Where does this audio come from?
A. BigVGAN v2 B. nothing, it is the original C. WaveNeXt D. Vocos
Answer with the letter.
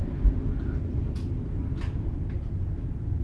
B